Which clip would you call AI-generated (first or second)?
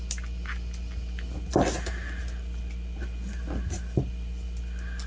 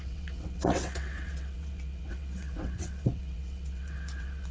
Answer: second